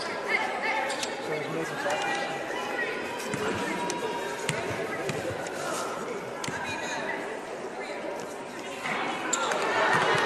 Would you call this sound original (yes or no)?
yes